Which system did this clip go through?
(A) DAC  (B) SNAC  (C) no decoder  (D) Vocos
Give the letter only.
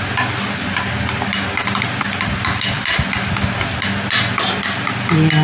C